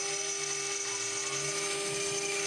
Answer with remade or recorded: recorded